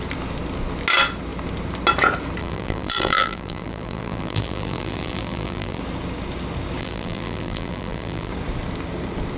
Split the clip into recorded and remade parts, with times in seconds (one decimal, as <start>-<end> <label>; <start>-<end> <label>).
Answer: 0.0-2.4 recorded; 2.4-5.8 remade; 5.8-6.8 recorded; 6.8-8.3 remade; 8.3-9.4 recorded